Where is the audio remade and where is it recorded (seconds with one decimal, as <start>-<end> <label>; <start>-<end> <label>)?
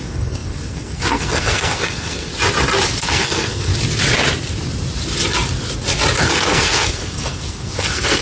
0.0-2.3 remade; 2.3-3.0 recorded; 3.0-3.7 remade; 3.7-6.2 recorded; 6.2-8.2 remade